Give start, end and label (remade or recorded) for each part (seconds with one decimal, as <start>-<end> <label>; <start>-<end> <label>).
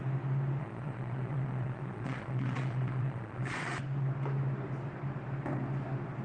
0.0-0.6 recorded; 0.6-3.8 remade; 3.8-6.2 recorded